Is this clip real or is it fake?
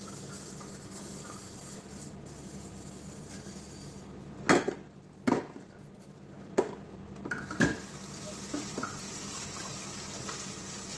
real